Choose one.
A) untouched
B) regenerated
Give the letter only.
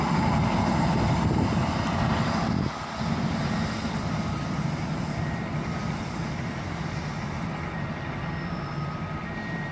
A